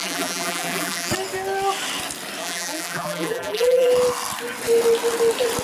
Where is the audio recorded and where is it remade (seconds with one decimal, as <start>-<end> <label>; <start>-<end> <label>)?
0.0-1.1 remade; 1.1-2.4 recorded; 2.4-3.9 remade; 3.9-5.6 recorded